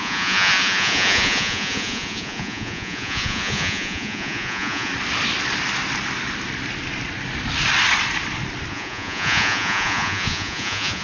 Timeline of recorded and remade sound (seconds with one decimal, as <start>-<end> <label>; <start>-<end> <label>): 0.0-4.9 remade; 4.9-8.7 recorded; 8.7-11.0 remade